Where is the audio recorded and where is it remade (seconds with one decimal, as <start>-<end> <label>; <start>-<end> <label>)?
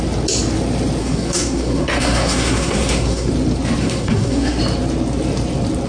0.0-1.0 recorded; 1.0-3.3 remade; 3.3-3.8 recorded; 3.8-4.6 remade; 4.6-5.9 recorded